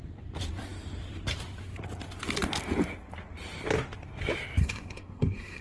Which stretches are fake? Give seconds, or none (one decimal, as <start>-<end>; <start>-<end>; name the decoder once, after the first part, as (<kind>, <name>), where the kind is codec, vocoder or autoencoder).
4.6-5.6 (codec, SNAC)